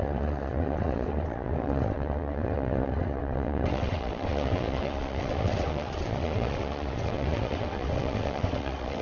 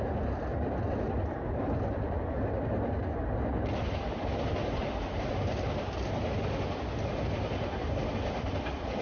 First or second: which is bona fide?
second